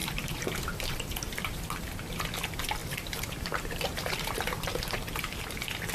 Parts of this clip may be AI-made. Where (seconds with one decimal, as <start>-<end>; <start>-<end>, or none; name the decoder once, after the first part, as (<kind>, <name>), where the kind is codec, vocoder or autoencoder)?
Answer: 0.0-1.8 (vocoder, BigVGAN v2); 2.8-4.9